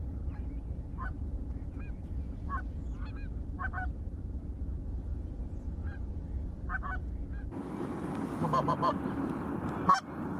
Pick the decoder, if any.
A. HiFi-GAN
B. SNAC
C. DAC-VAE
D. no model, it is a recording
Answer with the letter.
D